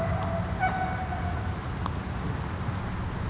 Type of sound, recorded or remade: recorded